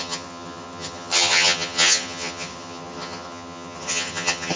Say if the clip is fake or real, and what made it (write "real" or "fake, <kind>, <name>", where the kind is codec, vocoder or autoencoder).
fake, vocoder, HiFi-GAN